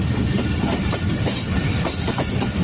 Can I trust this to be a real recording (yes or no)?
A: yes